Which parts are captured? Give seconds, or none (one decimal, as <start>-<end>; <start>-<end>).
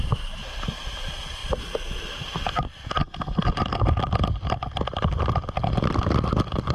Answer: 0.0-6.7